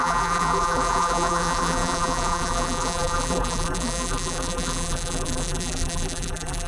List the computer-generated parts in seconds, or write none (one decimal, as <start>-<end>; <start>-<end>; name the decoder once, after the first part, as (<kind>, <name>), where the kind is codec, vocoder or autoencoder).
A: 0.0-6.7 (vocoder, BigVGAN v2)